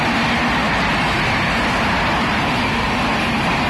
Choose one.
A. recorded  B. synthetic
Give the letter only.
A